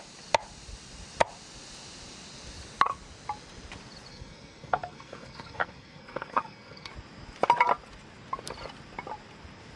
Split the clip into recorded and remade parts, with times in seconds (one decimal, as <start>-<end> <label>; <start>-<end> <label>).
0.0-4.1 recorded; 4.1-6.9 remade; 6.9-9.8 recorded